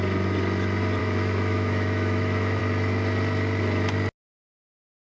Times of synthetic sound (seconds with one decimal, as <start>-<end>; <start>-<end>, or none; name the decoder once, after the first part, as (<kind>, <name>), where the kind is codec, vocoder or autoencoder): 1.0-2.6 (autoencoder, DAC-VAE)